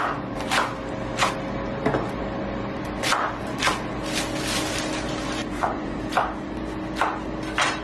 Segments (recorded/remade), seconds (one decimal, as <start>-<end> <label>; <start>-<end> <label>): 0.0-5.4 recorded; 5.4-6.0 remade; 6.0-7.8 recorded